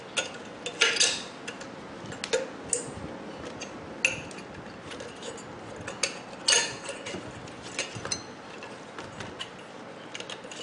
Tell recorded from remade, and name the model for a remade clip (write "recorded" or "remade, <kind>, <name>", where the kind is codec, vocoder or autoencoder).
recorded